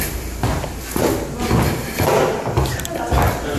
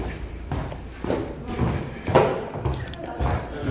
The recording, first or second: first